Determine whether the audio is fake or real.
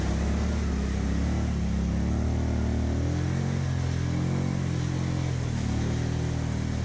real